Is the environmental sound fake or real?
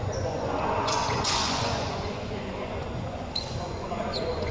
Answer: fake